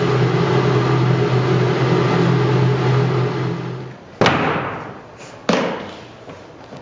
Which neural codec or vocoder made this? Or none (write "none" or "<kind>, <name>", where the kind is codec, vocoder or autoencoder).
none